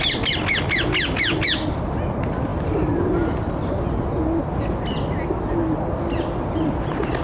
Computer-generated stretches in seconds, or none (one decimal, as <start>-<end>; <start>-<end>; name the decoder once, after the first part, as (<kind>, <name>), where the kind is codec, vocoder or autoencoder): none